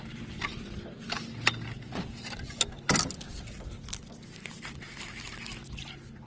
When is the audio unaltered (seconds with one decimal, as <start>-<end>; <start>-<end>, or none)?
0.0-6.3